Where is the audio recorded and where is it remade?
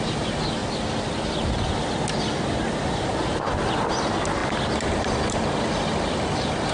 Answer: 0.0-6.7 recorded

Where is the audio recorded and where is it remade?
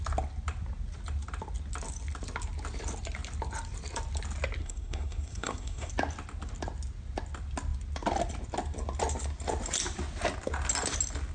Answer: 0.0-4.6 recorded; 4.6-5.9 remade; 5.9-11.3 recorded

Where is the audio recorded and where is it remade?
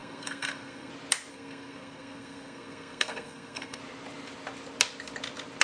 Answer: 0.0-0.9 remade; 0.9-1.3 recorded; 1.3-3.8 remade; 3.8-5.6 recorded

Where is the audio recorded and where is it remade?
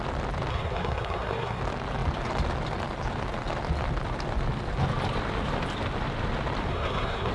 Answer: 0.0-0.5 recorded; 0.5-1.6 remade; 1.6-6.7 recorded; 6.7-7.3 remade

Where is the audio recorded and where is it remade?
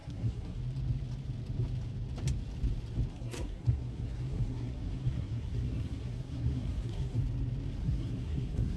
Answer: 0.0-0.6 remade; 0.6-3.1 recorded; 3.1-7.2 remade; 7.2-7.8 recorded; 7.8-8.8 remade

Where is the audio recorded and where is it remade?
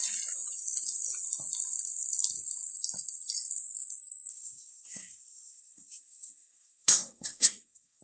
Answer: 0.0-4.3 recorded; 4.3-8.0 remade